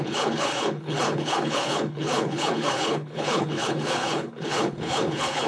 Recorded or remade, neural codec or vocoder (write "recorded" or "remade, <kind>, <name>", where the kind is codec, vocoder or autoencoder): remade, codec, HILCodec